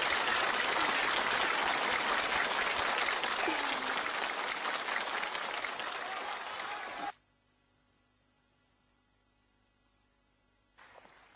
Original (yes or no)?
yes